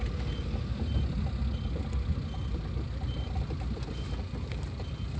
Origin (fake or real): real